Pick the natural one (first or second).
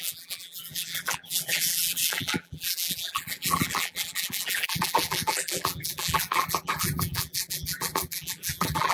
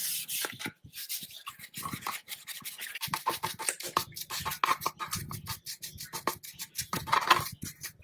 second